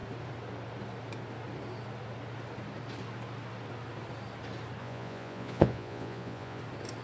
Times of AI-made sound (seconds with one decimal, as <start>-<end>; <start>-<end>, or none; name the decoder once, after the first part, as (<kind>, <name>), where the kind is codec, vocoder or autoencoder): 4.8-6.6 (vocoder, Vocos)